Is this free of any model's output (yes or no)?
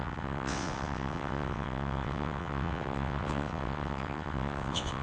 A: no